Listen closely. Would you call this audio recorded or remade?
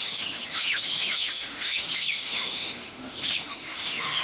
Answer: remade